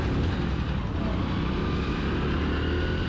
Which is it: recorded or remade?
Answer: recorded